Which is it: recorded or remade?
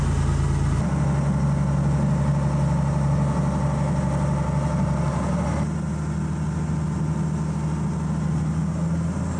recorded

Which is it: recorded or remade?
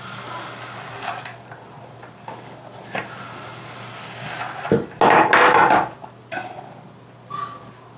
recorded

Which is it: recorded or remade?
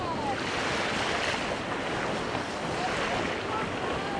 recorded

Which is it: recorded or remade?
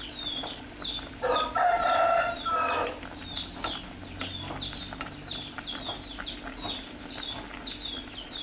recorded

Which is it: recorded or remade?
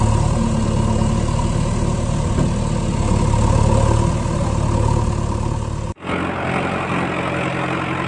recorded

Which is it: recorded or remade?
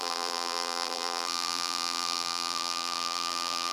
remade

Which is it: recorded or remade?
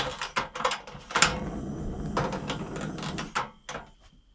recorded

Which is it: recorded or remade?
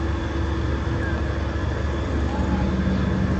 recorded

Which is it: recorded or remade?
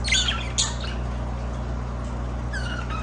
recorded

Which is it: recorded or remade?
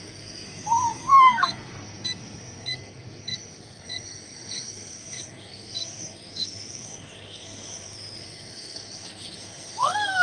remade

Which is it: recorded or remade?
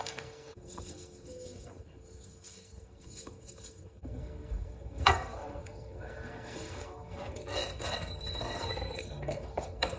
remade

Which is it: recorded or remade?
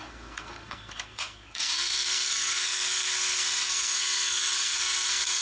remade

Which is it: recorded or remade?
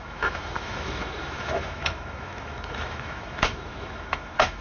remade